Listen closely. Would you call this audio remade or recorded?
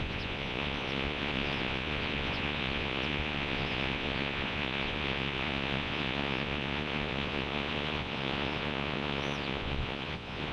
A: remade